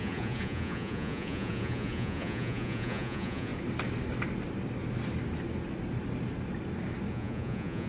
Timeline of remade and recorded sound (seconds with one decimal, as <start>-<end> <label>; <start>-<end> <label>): 0.0-3.5 remade; 3.5-7.1 recorded; 7.1-7.9 remade